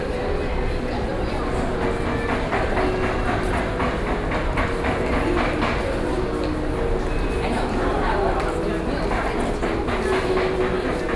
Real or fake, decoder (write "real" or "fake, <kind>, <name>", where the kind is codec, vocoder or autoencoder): real